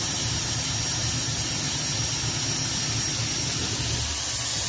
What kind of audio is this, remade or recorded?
recorded